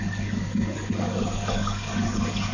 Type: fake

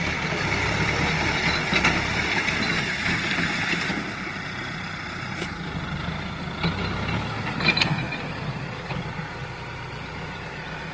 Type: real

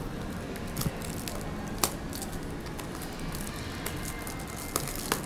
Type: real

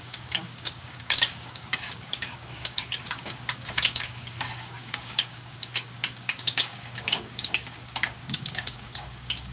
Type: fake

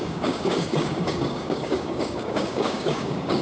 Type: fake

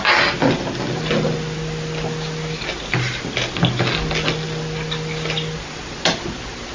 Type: real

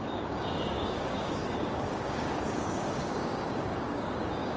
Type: fake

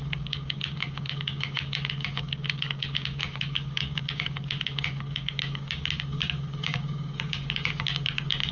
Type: fake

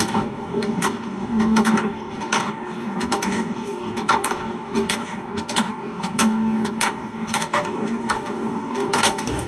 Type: fake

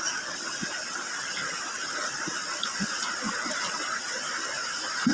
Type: real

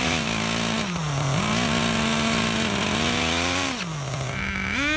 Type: real